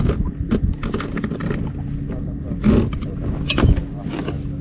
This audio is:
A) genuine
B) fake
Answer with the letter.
A